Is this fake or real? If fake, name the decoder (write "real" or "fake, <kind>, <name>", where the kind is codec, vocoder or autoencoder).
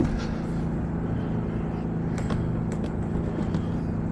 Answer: real